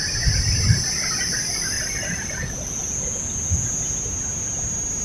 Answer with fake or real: real